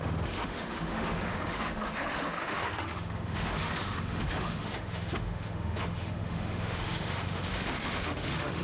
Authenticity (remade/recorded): remade